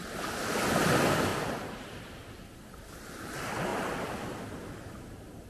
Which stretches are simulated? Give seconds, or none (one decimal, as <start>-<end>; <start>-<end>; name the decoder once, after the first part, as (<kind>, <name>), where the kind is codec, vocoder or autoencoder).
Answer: none